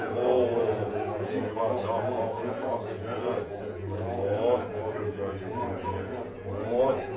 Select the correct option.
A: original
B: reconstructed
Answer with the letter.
B